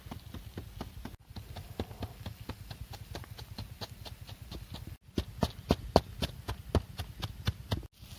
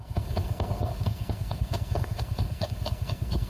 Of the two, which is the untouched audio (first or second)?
first